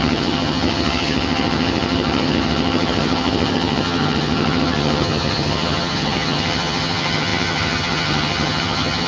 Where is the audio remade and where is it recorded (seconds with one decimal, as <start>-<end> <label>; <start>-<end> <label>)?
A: 0.0-9.1 remade